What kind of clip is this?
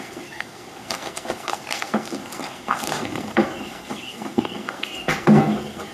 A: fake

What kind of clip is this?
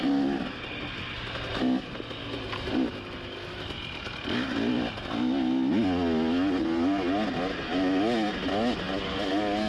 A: real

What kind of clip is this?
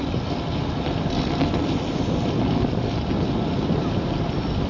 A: real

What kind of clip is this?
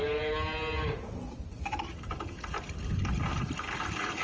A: real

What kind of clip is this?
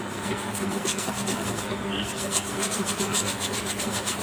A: fake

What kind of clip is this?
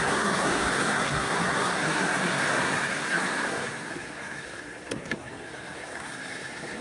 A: fake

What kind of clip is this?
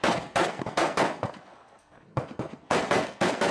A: fake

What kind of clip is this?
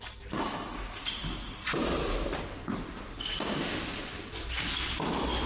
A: real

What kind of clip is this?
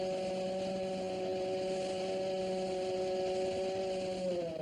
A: real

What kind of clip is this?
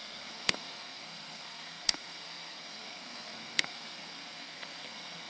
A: fake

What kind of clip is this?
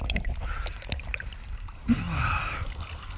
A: real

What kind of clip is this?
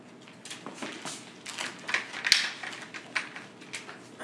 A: real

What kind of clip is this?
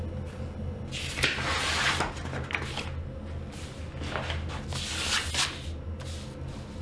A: real